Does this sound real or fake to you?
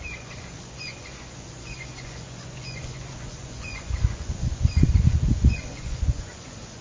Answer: fake